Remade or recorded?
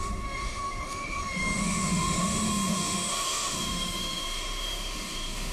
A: remade